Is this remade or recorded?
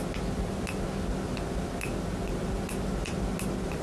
recorded